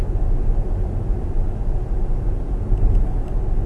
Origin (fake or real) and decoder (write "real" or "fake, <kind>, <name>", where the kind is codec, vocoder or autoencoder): real